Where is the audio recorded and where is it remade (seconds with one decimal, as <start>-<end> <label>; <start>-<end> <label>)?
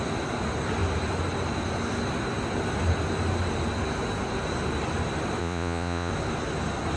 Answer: 0.0-5.4 recorded; 5.4-6.1 remade; 6.1-7.0 recorded